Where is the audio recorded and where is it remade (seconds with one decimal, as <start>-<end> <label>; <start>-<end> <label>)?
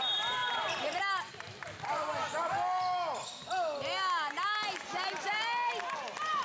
0.0-6.4 recorded